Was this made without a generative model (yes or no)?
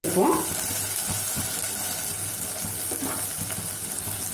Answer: yes